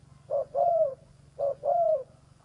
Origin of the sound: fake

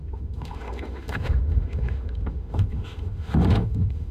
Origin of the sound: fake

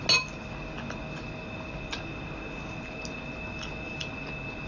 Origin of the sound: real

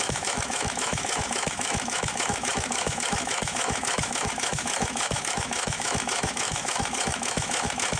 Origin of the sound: fake